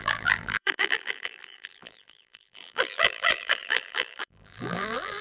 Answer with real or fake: fake